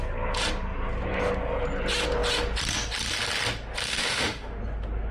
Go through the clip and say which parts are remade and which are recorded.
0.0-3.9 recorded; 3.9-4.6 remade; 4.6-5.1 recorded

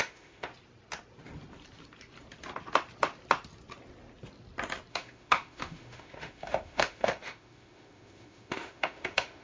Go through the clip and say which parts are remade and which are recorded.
0.0-0.5 remade; 0.5-4.9 recorded; 4.9-9.4 remade